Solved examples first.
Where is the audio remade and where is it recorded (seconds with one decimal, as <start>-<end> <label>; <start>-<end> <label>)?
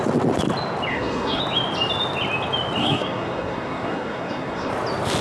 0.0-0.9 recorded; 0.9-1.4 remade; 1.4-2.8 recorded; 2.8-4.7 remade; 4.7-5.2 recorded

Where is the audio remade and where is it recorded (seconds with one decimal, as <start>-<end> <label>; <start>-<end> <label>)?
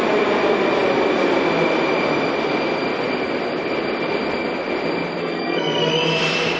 0.0-5.2 recorded; 5.2-5.9 remade; 5.9-6.6 recorded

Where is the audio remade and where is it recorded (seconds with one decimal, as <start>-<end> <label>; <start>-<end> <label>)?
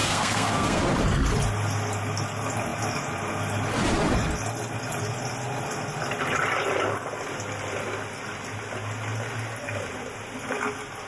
0.0-0.8 remade; 0.8-11.1 recorded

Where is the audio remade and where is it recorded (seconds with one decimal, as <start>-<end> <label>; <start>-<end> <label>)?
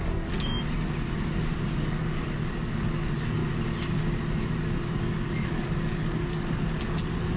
0.0-0.5 remade; 0.5-1.7 recorded; 1.7-3.4 remade; 3.4-4.9 recorded; 4.9-7.4 remade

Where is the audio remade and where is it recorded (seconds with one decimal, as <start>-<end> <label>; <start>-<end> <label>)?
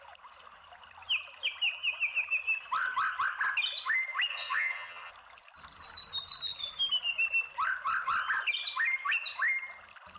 0.0-4.3 recorded; 4.3-5.1 remade; 5.1-10.2 recorded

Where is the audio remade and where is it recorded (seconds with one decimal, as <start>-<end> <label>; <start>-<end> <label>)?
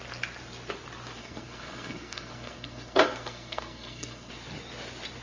0.0-1.2 recorded; 1.2-4.3 remade; 4.3-5.2 recorded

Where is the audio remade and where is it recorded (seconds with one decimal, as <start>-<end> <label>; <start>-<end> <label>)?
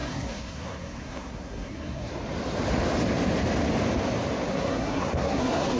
0.0-2.1 remade; 2.1-4.5 recorded; 4.5-5.8 remade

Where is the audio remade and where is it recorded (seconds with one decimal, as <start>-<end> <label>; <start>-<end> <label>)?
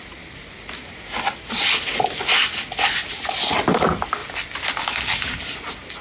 0.0-4.2 recorded; 4.2-4.8 remade; 4.8-6.0 recorded